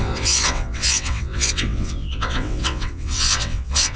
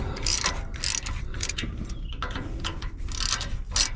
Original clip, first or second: second